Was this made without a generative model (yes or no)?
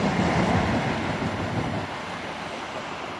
yes